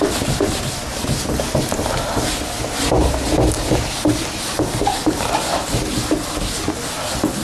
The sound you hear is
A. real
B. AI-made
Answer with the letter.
A